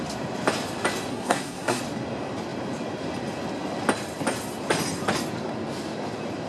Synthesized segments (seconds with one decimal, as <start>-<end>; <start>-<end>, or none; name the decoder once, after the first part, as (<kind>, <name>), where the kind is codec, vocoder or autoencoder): 1.1-1.8 (codec, SNAC)